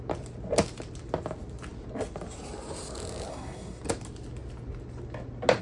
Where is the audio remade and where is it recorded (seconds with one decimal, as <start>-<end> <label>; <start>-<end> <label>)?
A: 0.0-3.3 recorded; 3.3-3.8 remade; 3.8-5.6 recorded